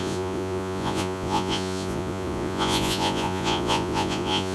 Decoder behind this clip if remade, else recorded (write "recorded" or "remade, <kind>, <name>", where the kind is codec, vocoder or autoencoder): remade, vocoder, Vocos